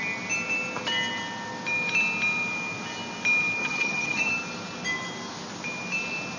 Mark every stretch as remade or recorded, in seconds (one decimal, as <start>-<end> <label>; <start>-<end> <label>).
0.0-3.6 recorded; 3.6-4.3 remade; 4.3-6.4 recorded